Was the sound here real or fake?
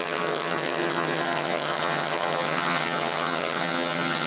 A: fake